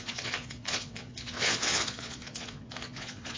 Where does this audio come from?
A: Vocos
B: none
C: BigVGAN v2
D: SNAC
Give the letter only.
A